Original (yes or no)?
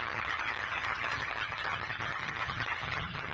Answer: no